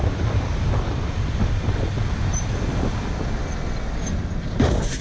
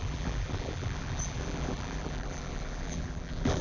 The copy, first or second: second